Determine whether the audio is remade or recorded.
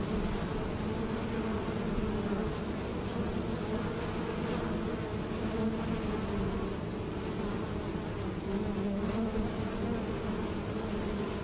recorded